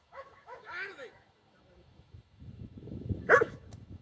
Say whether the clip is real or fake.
fake